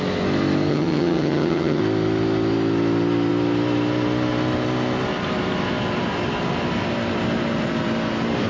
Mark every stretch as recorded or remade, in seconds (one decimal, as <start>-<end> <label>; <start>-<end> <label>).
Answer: 0.0-0.7 recorded; 0.7-1.8 remade; 1.8-8.5 recorded